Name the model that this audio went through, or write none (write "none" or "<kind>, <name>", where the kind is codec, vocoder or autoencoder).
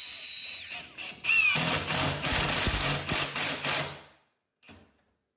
none